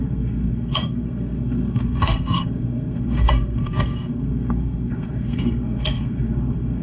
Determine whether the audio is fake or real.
fake